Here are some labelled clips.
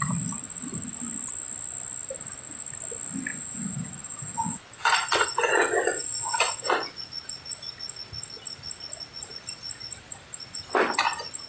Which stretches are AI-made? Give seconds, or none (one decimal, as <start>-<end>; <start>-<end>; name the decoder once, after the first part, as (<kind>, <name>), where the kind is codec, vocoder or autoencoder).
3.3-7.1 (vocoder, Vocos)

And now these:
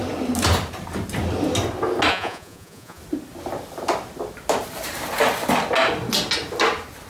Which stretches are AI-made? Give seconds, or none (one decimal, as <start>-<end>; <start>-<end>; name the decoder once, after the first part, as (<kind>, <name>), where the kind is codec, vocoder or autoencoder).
2.1-3.0 (vocoder, Vocos)

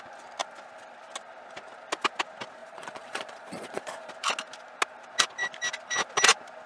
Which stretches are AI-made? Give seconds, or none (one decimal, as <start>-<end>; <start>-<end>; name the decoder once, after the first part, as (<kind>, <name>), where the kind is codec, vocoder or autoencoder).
2.6-4.1 (vocoder, Vocos)

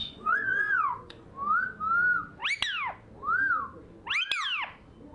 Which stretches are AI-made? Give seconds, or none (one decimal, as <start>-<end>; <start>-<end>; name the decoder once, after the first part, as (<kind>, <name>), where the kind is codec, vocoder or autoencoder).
0.0-1.3 (vocoder, Vocos)